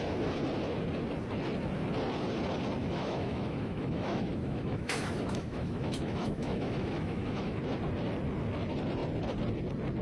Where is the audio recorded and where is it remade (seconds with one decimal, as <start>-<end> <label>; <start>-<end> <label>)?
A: 0.0-2.8 recorded; 2.8-7.6 remade; 7.6-10.0 recorded